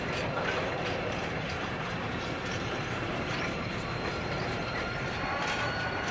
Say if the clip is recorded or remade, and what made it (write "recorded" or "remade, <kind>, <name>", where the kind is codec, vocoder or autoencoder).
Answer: remade, vocoder, BigVGAN v2